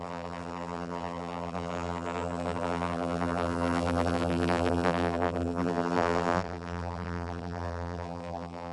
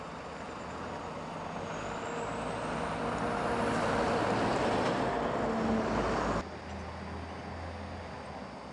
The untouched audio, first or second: second